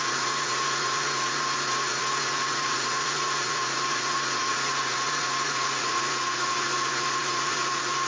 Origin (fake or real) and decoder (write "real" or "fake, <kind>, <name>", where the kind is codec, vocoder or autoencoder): fake, vocoder, Vocos